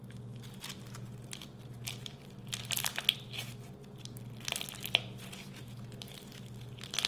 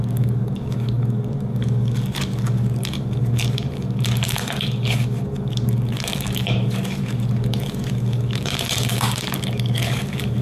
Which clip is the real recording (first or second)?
first